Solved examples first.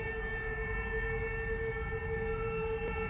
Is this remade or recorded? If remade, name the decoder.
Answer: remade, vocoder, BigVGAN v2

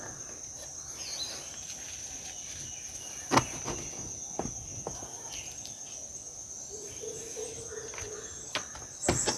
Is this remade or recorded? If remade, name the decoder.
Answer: recorded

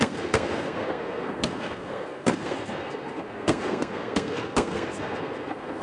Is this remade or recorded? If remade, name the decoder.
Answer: remade, codec, SNAC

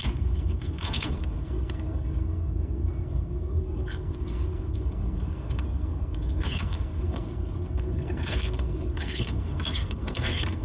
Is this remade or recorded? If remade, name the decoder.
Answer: remade, codec, SNAC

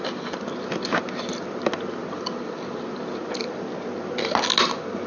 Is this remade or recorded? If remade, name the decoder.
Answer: recorded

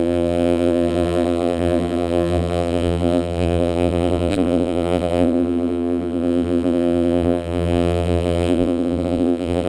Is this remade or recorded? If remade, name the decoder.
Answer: remade, vocoder, BigVGAN v2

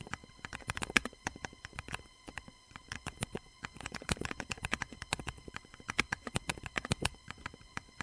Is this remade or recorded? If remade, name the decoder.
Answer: remade, vocoder, Vocos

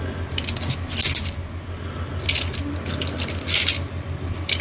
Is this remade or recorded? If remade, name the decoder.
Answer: recorded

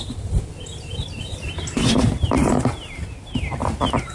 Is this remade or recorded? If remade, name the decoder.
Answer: recorded